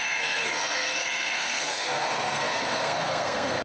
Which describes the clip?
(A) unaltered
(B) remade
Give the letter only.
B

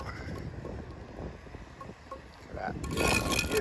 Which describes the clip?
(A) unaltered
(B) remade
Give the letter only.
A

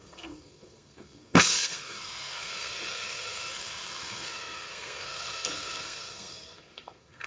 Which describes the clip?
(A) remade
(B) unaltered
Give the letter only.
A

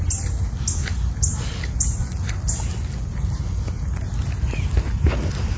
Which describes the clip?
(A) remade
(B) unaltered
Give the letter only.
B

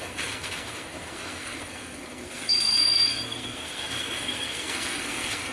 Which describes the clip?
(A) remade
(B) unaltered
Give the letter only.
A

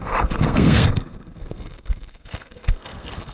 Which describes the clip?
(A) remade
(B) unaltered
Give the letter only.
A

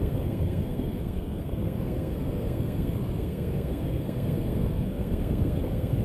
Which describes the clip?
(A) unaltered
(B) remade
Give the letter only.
B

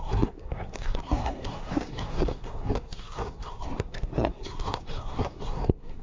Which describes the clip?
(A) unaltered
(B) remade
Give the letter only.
B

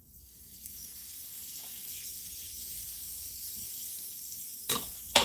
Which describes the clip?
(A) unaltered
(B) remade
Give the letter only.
B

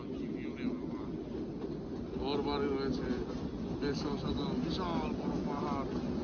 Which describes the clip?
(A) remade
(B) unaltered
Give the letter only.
B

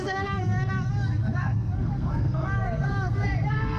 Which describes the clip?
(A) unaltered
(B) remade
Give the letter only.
B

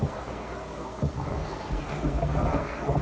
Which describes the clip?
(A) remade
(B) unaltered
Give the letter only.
A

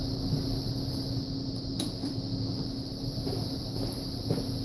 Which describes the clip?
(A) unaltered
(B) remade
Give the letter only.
A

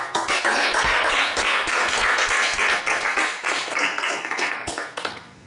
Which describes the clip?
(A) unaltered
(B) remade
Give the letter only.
B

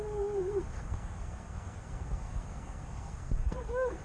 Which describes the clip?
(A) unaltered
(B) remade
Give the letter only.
B